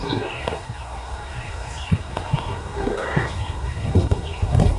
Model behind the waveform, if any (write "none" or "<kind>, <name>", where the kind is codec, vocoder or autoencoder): codec, SNAC